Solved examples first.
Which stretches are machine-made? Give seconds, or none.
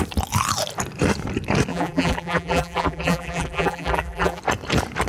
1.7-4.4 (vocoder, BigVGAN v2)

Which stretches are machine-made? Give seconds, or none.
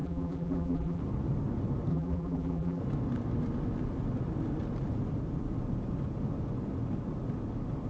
0.0-1.0 (vocoder, BigVGAN v2); 1.9-2.8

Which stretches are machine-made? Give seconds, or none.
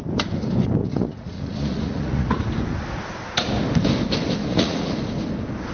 0.8-2.4 (vocoder, Vocos); 4.4-4.9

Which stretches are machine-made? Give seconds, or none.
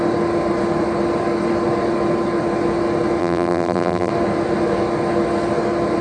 3.2-4.1 (vocoder, BigVGAN v2)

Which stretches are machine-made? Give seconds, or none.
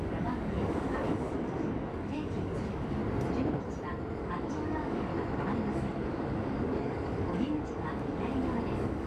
0.0-3.0 (codec, DAC); 4.2-5.1; 5.7-9.1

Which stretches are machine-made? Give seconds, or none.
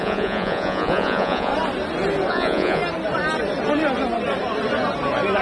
0.0-1.5 (vocoder, Vocos); 2.3-2.8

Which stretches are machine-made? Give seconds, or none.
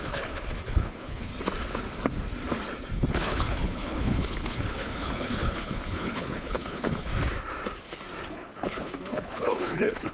0.0-1.3 (codec, HILCodec); 3.1-7.1; 8.3-10.1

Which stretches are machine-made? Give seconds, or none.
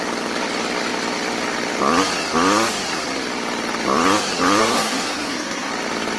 4.6-5.7 (codec, SNAC)